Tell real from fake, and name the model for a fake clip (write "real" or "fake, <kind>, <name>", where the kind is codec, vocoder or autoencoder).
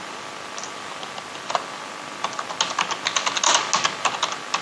real